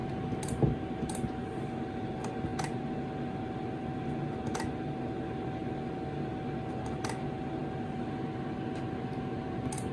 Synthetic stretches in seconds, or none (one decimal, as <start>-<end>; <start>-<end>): none